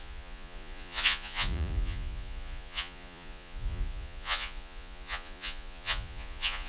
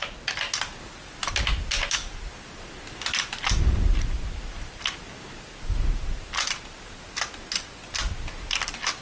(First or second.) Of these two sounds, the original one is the second